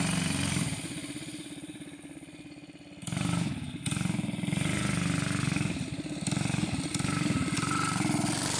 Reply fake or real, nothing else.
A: real